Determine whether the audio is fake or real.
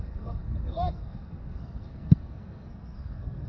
fake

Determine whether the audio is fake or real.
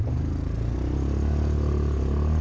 real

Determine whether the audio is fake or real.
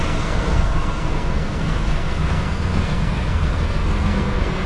fake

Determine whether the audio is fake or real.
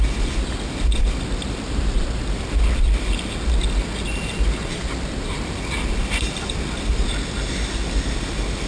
real